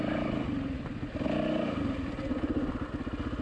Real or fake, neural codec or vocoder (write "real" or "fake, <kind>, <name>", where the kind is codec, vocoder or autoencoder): real